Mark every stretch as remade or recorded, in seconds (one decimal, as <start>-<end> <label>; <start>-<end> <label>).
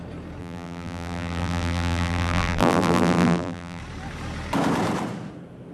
0.0-0.4 recorded; 0.4-3.8 remade; 3.8-5.7 recorded